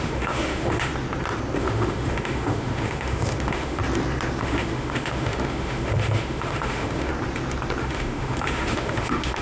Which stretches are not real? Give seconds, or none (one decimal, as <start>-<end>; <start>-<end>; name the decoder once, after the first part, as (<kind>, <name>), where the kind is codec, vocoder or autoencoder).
0.0-0.9 (autoencoder, DAC-VAE); 1.6-3.8; 4.4-7.1; 7.8-9.4